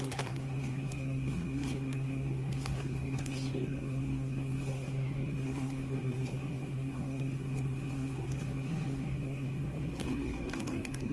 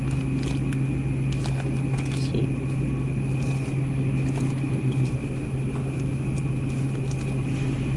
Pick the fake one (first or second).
first